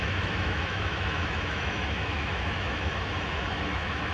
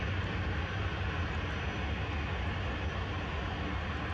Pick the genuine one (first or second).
second